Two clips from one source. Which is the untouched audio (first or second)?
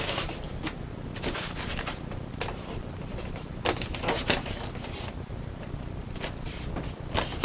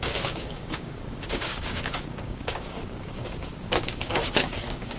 first